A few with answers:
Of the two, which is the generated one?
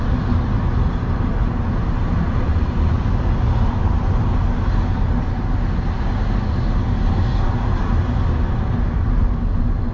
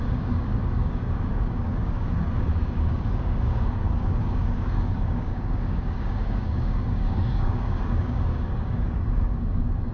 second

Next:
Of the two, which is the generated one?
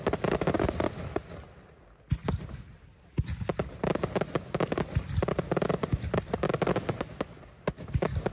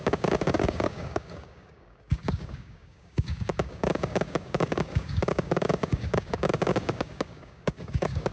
second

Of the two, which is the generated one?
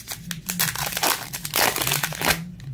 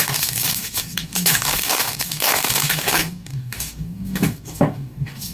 second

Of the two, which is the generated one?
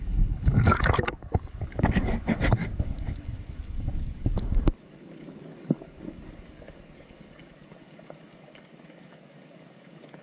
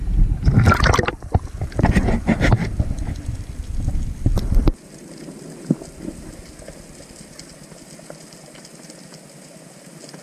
first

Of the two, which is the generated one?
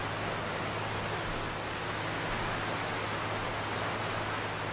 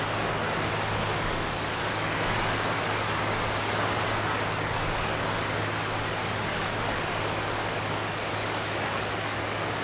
second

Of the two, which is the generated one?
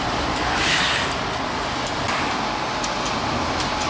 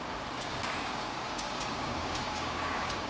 second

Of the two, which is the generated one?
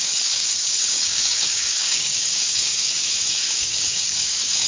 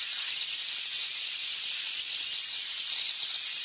first